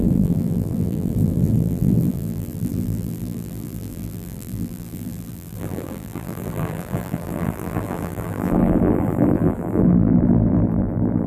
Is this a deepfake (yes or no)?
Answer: yes